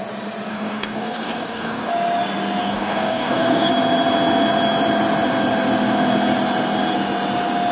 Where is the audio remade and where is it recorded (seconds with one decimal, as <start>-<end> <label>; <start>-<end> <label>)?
0.0-0.5 recorded; 0.5-1.9 remade; 1.9-2.6 recorded; 2.6-3.7 remade; 3.7-7.7 recorded